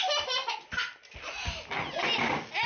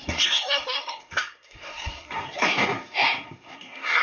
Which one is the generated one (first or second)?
second